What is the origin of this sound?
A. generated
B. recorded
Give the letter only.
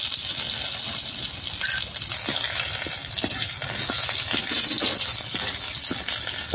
B